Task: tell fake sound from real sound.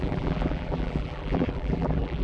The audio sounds fake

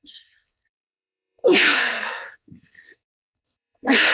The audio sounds fake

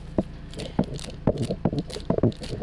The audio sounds real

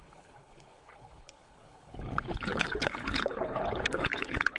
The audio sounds fake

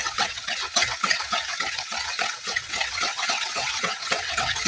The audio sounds fake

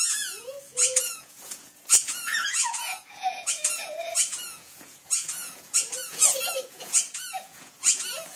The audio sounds fake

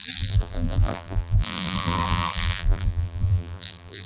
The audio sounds fake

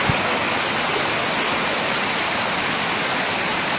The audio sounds real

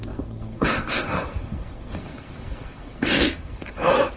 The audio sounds fake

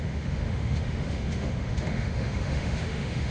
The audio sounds fake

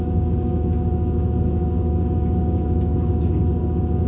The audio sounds fake